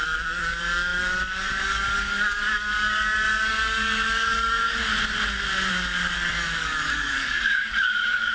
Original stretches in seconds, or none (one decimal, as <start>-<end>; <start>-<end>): 4.9-5.7